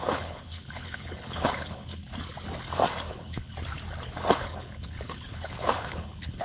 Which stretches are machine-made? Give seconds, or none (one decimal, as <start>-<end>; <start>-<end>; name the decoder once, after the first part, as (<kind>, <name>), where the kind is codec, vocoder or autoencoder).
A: 0.0-2.0 (codec, HILCodec); 3.1-3.5; 4.4-6.4